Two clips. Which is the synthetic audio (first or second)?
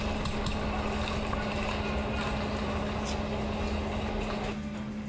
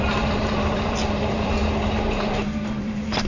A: second